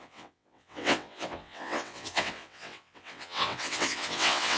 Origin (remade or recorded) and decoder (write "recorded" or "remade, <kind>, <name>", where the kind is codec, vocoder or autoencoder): remade, vocoder, WaveNeXt